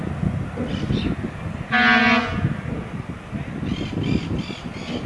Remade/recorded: recorded